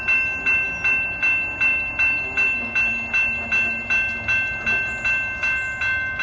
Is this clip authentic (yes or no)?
yes